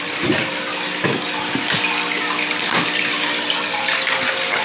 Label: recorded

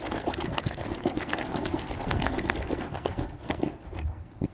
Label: remade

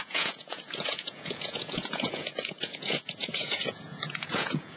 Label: remade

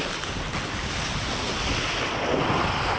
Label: recorded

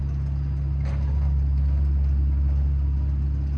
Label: recorded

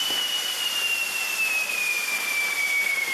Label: recorded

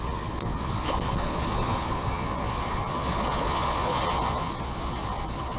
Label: remade